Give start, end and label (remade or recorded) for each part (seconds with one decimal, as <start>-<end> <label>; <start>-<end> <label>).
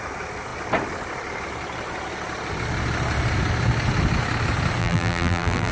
0.0-4.8 recorded; 4.8-5.7 remade